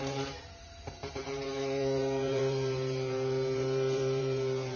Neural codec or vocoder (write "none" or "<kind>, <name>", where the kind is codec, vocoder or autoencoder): vocoder, BigVGAN v2